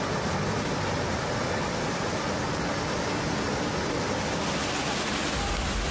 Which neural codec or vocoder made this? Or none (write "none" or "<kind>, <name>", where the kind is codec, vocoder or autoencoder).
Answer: none